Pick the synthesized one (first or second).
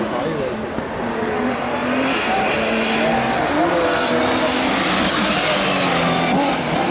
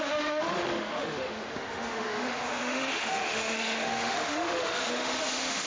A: second